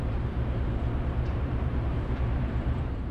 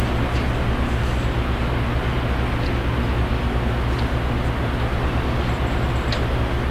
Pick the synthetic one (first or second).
first